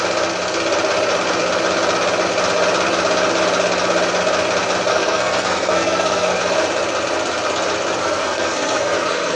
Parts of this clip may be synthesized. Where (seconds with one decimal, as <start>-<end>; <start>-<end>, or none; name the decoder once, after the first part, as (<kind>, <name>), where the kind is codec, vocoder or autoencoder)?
4.9-6.4 (codec, SNAC); 8.0-9.4